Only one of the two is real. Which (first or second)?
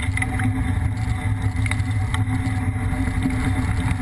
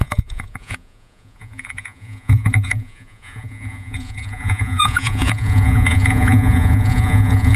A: first